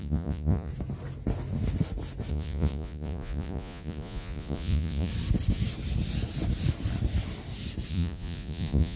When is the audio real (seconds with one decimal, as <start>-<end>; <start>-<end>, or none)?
0.7-2.3; 5.1-7.9